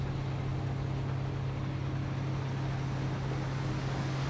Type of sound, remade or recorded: recorded